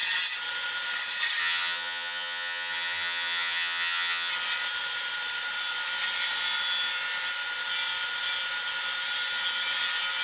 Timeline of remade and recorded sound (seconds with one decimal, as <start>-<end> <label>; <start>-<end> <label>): 0.0-1.4 recorded; 1.4-4.3 remade; 4.3-10.2 recorded